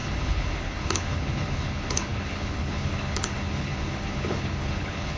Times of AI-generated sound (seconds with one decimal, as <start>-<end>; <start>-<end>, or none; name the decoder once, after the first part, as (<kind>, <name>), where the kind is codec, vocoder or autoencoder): 0.0-5.2 (codec, HILCodec)